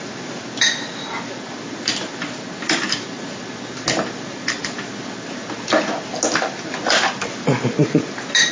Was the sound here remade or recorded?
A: recorded